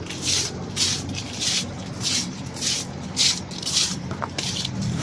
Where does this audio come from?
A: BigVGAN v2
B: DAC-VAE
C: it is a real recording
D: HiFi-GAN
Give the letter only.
A